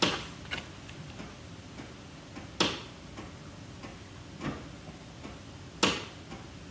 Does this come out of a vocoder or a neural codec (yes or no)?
no